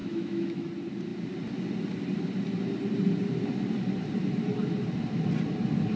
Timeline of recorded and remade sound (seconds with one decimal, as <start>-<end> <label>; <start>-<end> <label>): 0.0-0.7 remade; 0.7-6.0 recorded